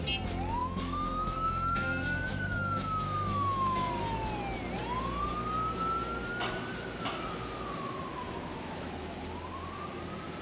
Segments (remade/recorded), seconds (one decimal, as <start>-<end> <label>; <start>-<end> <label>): 0.0-0.6 recorded; 0.6-3.9 remade; 3.9-8.1 recorded; 8.1-9.2 remade; 9.2-10.4 recorded